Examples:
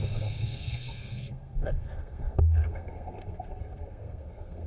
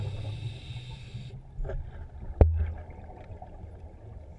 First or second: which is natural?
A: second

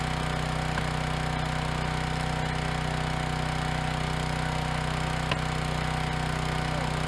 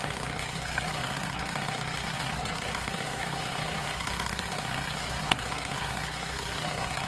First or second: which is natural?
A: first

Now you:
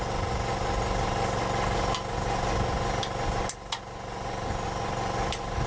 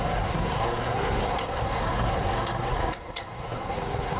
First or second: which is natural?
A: first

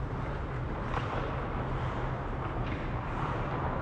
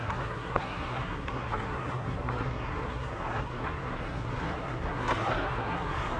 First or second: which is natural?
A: first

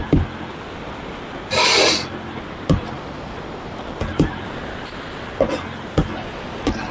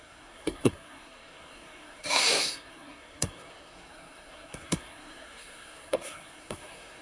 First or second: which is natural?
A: first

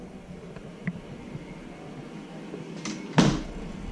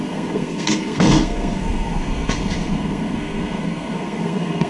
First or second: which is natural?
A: first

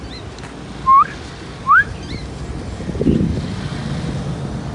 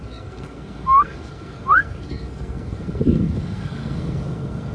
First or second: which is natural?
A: first